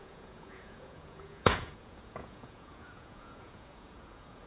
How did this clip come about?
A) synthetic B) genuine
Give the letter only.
A